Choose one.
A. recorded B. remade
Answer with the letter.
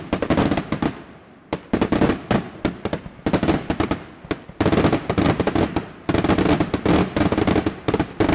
A